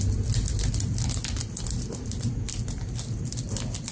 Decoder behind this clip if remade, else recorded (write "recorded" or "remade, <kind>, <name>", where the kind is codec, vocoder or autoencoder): recorded